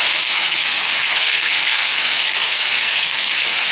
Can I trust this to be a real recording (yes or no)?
no